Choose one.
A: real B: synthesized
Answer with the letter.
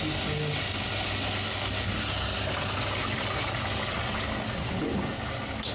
A